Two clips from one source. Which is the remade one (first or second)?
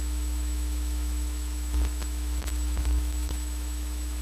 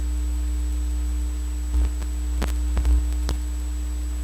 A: first